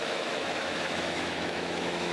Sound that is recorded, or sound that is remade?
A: remade